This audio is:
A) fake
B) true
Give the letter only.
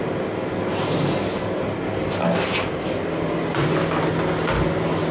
B